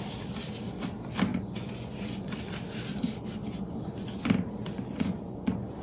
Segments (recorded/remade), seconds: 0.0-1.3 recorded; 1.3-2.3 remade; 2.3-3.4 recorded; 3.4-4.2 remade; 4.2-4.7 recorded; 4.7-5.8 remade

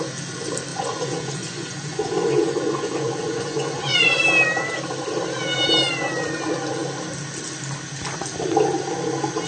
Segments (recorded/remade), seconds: 0.0-0.7 recorded; 0.7-4.2 remade; 4.2-9.5 recorded

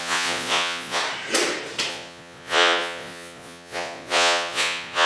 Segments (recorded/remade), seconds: 0.0-1.0 remade; 1.0-1.9 recorded; 1.9-5.1 remade

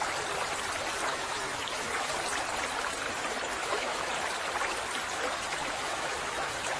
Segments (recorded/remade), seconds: 0.0-1.1 recorded; 1.1-2.1 remade; 2.1-3.6 recorded; 3.6-4.1 remade; 4.1-5.6 recorded; 5.6-6.8 remade

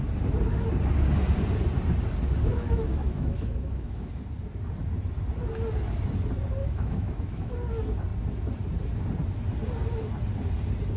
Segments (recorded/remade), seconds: 0.0-2.5 recorded; 2.5-4.2 remade; 4.2-6.6 recorded; 6.6-7.5 remade; 7.5-11.0 recorded

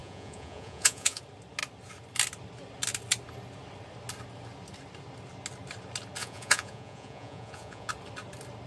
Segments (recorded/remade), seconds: 0.0-1.2 remade; 1.2-6.2 recorded; 6.2-7.9 remade; 7.9-8.7 recorded

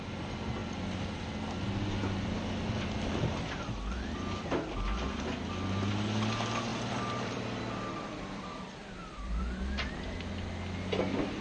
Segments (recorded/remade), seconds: 0.0-6.7 recorded; 6.7-9.9 remade; 9.9-11.4 recorded